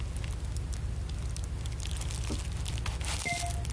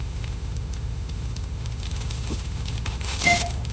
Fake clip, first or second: second